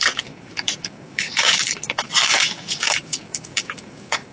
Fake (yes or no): yes